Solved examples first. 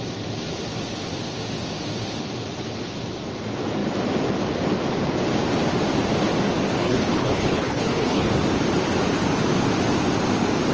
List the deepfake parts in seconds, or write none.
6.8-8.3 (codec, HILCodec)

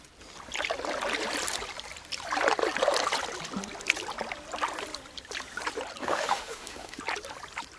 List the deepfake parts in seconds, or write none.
6.0-7.0 (autoencoder, DAC-VAE)

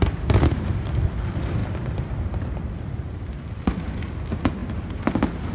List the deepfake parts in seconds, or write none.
none

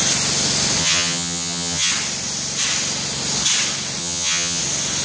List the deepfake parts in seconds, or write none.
0.8-1.9 (vocoder, HiFi-GAN); 4.0-4.6

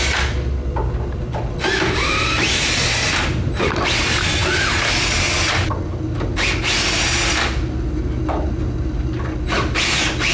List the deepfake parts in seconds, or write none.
none

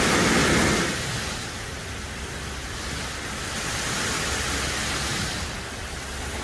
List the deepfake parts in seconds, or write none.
none

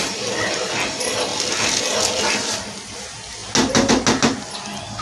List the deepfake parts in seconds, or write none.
none